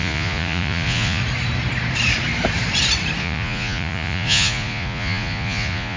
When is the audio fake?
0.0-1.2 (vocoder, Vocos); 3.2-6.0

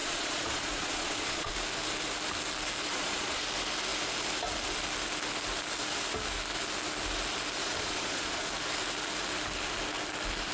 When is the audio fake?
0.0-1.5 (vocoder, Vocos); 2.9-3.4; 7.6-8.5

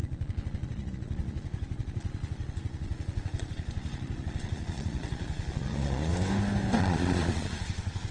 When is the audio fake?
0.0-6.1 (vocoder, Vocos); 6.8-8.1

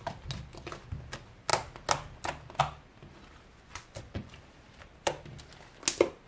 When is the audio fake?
3.5-4.3 (vocoder, Vocos)

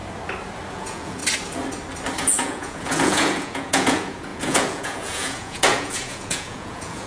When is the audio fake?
0.7-1.2 (vocoder, Vocos); 2.2-7.1

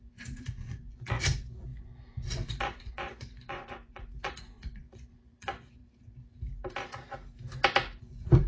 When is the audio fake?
0.0-5.8 (vocoder, Vocos); 8.0-8.5